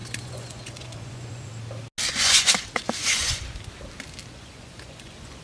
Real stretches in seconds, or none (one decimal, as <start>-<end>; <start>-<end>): 1.5-2.1; 3.5-4.3